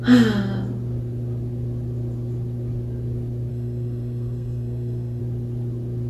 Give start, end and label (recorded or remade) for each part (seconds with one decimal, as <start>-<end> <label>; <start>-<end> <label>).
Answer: 0.0-3.5 recorded; 3.5-5.2 remade; 5.2-6.1 recorded